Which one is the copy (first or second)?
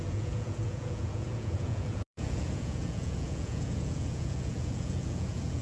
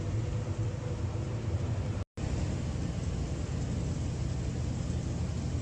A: first